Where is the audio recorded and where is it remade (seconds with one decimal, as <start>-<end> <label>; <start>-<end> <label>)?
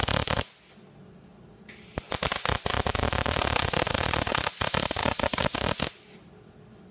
0.0-6.9 recorded